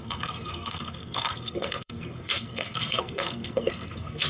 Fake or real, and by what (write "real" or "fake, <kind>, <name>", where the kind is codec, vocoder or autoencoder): fake, codec, SNAC